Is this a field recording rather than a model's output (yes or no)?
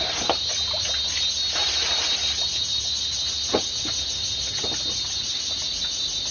yes